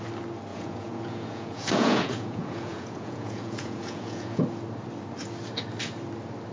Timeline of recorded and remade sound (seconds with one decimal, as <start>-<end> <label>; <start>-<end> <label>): 0.0-0.5 recorded; 0.5-4.4 remade; 4.4-6.5 recorded